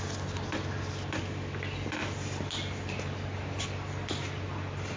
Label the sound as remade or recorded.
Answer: recorded